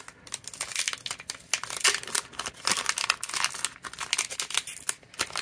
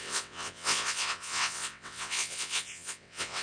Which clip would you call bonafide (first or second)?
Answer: first